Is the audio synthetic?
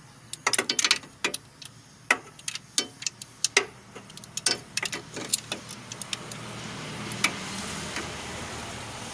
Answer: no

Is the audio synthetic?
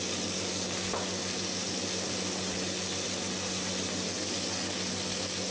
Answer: no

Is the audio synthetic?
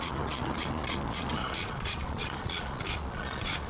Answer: yes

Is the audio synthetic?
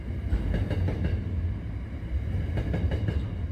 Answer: no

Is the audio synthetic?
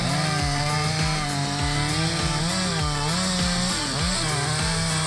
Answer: no